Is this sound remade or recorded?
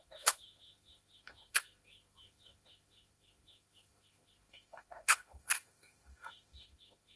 remade